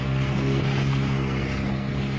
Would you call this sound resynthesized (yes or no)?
yes